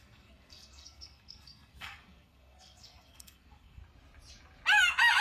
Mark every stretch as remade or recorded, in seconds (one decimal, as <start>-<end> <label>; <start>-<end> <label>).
0.0-3.8 remade; 3.8-5.2 recorded